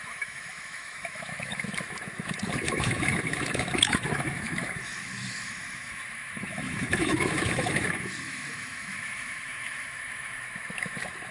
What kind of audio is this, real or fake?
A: fake